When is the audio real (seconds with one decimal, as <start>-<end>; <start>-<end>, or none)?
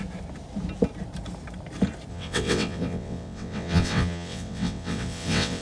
0.0-2.1